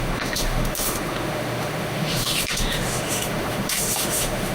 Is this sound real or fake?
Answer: fake